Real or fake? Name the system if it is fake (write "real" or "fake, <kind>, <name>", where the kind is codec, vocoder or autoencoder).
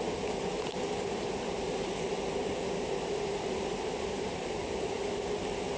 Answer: real